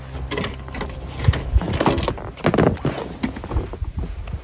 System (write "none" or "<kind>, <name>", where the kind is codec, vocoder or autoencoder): none